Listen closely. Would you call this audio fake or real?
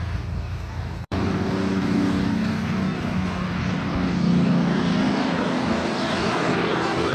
fake